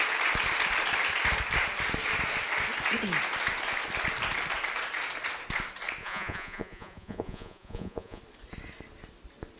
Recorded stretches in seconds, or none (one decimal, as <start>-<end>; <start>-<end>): 0.0-6.0; 8.2-9.6